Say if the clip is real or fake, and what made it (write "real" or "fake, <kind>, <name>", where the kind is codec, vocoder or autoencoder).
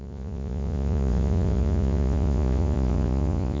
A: fake, vocoder, Vocos